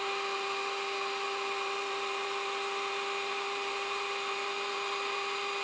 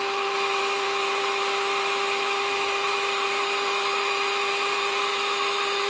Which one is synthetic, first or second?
second